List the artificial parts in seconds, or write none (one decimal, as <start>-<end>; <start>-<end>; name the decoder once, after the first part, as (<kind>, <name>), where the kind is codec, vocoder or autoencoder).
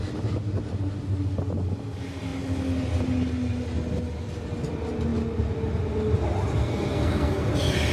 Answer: 6.6-7.5 (codec, SNAC)